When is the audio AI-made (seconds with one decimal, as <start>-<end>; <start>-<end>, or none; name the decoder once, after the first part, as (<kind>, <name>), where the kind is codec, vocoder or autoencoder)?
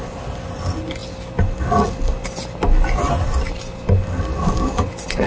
none